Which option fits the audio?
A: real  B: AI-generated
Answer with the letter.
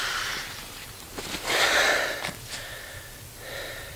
B